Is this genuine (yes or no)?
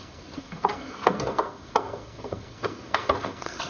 no